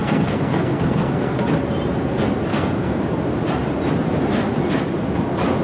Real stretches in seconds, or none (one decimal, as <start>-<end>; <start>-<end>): 1.4-2.5; 3.0-5.6